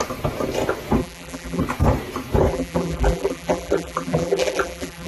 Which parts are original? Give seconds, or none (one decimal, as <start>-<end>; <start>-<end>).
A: 0.0-1.0; 1.6-2.5